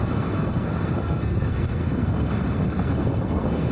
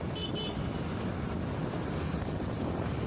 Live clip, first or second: second